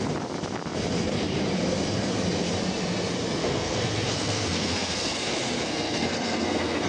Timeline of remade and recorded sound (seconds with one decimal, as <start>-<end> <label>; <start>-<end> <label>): 0.0-3.4 recorded; 3.4-6.9 remade